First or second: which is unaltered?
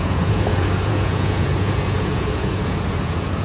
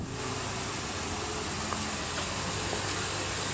second